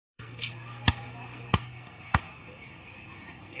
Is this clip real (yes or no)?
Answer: no